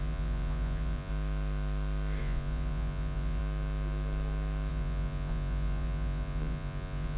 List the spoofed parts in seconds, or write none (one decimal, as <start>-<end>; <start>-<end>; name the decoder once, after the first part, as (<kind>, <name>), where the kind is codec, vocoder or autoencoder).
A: 0.0-1.1 (vocoder, Vocos); 2.2-3.4; 4.7-7.2